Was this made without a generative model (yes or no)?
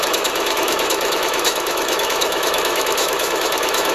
no